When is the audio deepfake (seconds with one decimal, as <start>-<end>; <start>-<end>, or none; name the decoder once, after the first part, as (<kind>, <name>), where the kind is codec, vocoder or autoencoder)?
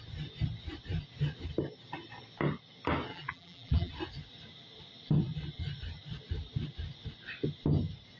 3.1-3.9 (vocoder, BigVGAN v2)